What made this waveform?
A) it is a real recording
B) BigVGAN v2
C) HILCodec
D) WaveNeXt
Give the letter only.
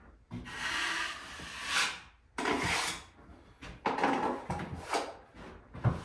A